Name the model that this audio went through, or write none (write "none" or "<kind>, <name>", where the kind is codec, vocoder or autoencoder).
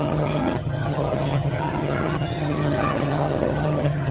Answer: vocoder, HiFi-GAN